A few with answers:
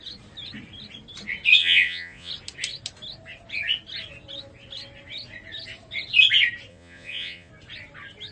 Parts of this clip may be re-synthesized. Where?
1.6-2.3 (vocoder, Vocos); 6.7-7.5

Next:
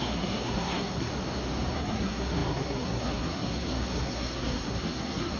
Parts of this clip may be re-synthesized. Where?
0.0-1.1 (codec, SNAC); 1.7-5.4